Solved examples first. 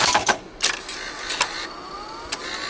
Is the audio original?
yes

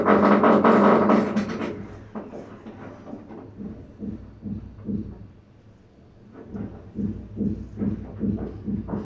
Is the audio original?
yes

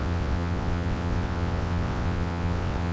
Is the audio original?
no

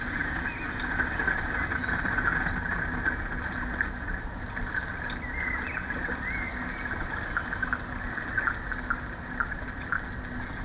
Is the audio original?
yes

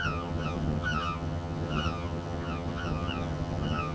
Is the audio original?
no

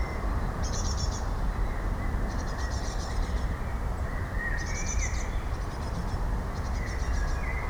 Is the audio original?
no